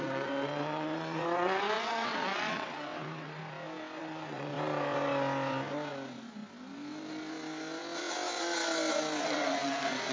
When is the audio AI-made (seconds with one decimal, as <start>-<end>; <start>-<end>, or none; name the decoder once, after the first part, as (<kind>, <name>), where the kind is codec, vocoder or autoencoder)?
0.0-3.4 (vocoder, WaveNeXt); 4.0-4.5; 9.2-10.1